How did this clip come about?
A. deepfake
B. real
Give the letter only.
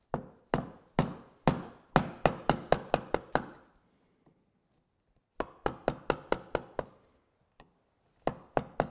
B